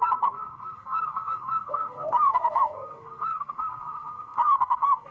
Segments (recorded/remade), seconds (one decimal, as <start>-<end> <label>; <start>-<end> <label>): 0.0-5.1 remade